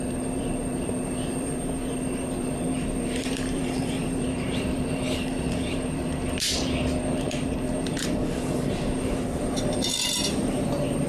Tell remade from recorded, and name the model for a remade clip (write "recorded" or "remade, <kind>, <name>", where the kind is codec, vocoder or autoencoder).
remade, vocoder, BigVGAN v2